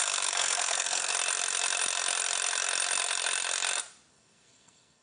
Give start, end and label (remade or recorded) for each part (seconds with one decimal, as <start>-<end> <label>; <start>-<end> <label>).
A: 0.0-1.1 remade; 1.1-4.1 recorded; 4.1-5.0 remade